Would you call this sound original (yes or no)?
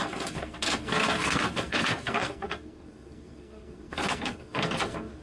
no